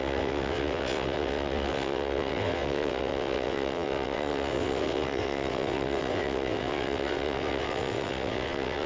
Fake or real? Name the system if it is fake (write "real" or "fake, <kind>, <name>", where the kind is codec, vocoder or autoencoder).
fake, vocoder, WaveNeXt